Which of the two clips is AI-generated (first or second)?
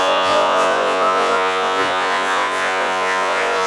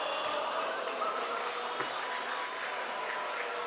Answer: first